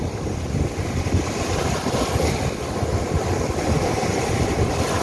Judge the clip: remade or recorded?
recorded